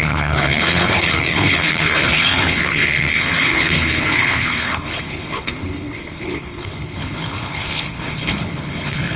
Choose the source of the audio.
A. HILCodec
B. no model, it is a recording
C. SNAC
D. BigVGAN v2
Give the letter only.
A